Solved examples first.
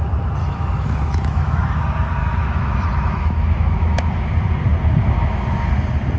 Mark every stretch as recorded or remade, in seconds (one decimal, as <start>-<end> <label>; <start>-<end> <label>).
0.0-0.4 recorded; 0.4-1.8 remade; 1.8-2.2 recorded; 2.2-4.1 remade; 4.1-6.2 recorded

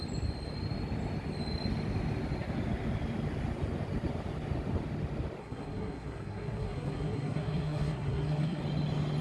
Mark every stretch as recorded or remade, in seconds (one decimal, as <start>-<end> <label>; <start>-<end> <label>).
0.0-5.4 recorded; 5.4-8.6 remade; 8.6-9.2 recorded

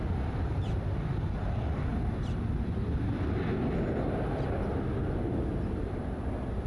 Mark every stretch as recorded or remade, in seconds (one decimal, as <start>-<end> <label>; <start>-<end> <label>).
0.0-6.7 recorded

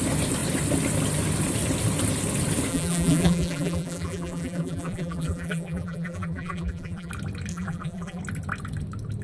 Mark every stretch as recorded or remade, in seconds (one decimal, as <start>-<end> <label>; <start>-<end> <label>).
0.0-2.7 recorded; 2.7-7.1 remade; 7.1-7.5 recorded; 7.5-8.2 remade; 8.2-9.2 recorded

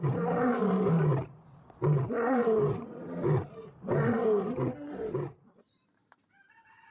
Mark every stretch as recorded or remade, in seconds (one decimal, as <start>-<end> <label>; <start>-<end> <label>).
0.0-6.9 remade